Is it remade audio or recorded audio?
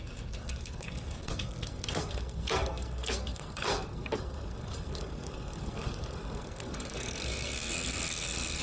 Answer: remade